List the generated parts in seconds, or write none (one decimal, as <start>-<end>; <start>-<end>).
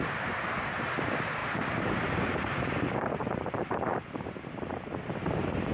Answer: 1.4-4.8